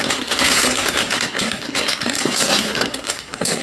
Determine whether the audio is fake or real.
fake